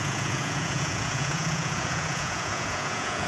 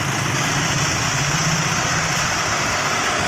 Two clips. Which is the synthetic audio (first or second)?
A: first